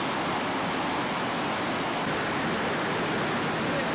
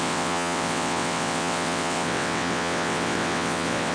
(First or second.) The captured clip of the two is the first